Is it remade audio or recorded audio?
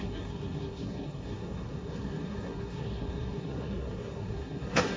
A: remade